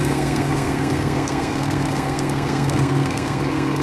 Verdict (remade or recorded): remade